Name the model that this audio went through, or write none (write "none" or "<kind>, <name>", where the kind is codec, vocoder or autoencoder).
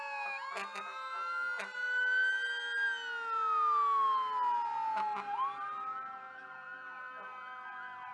none